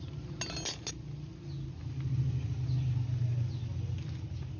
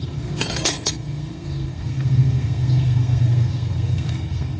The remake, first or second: second